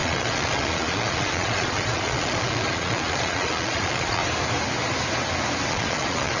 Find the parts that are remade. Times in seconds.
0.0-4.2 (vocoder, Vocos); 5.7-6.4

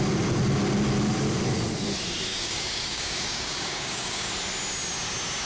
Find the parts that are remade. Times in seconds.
2.3-4.3 (codec, DAC)